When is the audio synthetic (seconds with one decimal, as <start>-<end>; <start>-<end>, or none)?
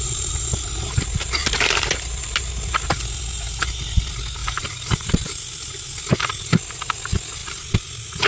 4.4-5.4